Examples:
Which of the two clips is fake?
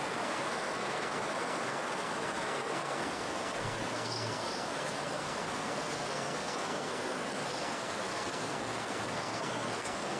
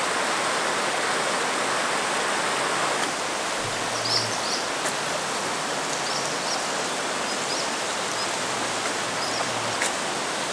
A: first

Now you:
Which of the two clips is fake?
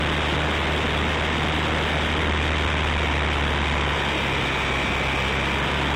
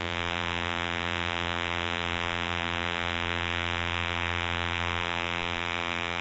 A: second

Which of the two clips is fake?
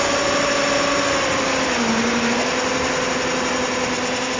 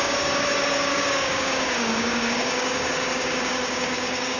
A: second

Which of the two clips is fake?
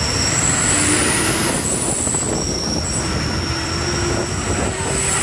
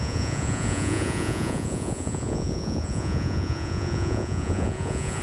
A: second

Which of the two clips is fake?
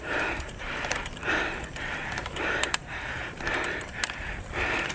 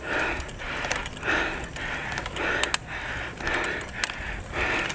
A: first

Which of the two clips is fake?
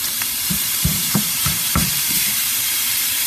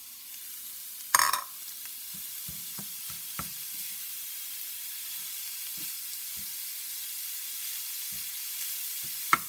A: first